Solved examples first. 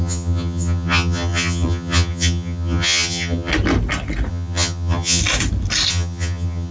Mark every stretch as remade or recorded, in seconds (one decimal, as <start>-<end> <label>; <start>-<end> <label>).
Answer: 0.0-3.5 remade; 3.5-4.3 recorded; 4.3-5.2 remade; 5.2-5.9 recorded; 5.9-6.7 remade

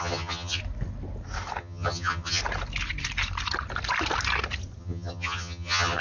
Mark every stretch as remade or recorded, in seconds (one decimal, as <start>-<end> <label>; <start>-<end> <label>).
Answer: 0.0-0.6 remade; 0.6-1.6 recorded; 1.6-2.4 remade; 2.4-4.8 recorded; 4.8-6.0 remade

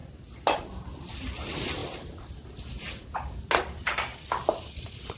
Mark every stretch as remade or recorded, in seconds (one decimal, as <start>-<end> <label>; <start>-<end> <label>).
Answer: 0.0-5.2 recorded

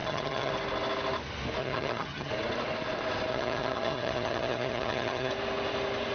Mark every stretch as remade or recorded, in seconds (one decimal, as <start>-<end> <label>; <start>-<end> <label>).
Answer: 0.0-0.5 remade; 0.5-1.6 recorded; 1.6-2.3 remade; 2.3-3.3 recorded; 3.3-5.3 remade; 5.3-6.1 recorded